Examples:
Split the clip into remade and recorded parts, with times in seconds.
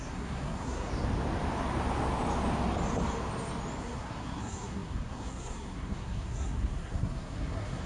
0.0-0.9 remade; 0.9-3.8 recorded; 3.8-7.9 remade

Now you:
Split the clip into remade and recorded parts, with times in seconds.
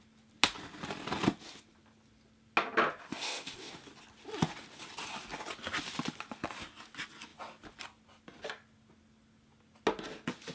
0.0-3.0 recorded; 3.0-3.7 remade; 3.7-10.5 recorded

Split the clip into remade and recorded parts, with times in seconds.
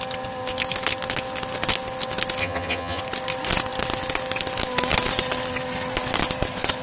0.0-2.4 recorded; 2.4-3.0 remade; 3.0-6.8 recorded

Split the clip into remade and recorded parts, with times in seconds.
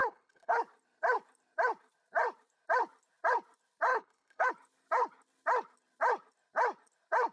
0.0-0.6 remade; 0.6-3.9 recorded; 3.9-4.5 remade; 4.5-7.3 recorded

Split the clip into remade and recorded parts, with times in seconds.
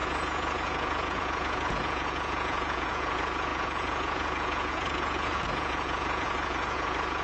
0.0-7.2 remade